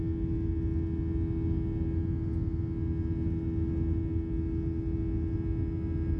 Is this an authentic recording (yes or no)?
yes